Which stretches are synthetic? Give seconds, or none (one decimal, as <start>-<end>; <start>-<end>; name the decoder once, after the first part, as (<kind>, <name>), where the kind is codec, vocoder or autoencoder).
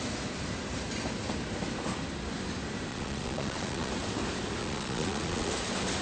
2.9-3.9 (vocoder, Vocos); 4.6-5.5